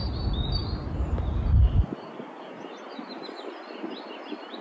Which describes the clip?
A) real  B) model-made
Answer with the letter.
A